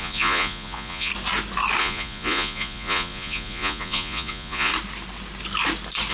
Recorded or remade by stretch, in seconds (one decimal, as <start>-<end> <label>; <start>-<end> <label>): 0.0-1.1 remade; 1.1-1.8 recorded; 1.8-4.7 remade; 4.7-6.1 recorded